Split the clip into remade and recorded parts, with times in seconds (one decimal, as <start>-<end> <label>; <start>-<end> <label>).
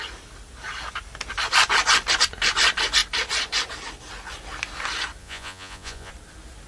0.0-5.2 recorded; 5.2-6.1 remade; 6.1-6.7 recorded